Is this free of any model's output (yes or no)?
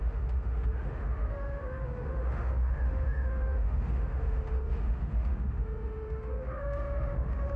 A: no